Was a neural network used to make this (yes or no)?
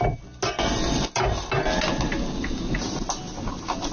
no